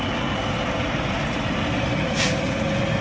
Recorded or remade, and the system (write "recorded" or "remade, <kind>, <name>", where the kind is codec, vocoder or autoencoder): recorded